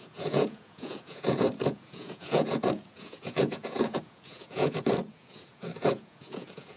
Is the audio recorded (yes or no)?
no